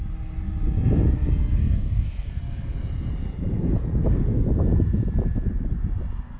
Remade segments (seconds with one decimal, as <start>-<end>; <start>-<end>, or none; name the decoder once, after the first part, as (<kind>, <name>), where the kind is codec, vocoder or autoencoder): 1.6-2.4 (codec, SNAC)